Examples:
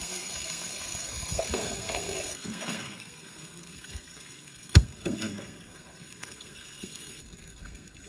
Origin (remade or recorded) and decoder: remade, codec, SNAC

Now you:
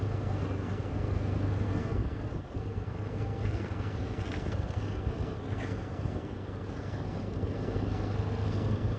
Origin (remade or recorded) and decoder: remade, codec, SNAC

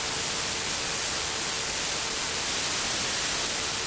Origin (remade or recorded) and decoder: recorded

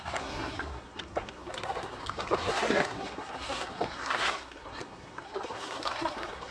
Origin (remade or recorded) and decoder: remade, codec, SNAC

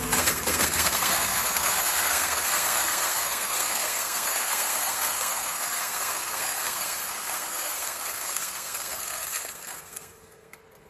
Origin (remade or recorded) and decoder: remade, codec, SNAC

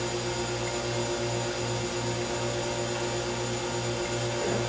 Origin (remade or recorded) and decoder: recorded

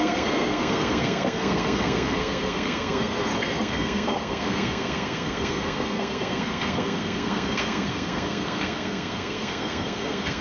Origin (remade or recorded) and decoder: remade, codec, SNAC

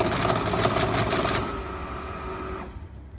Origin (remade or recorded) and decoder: recorded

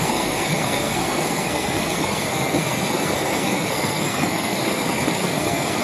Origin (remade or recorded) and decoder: remade, codec, SNAC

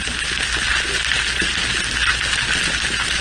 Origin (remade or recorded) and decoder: recorded